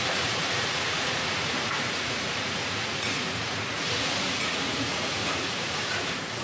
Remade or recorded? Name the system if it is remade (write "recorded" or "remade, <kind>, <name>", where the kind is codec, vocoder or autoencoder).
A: remade, vocoder, Vocos